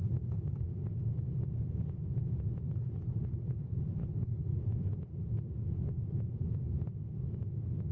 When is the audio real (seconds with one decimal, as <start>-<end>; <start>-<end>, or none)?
0.0-4.0; 4.5-7.9